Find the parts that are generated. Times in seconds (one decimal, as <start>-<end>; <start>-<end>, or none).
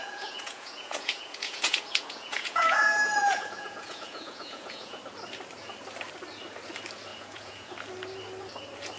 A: 0.0-5.0; 7.1-7.7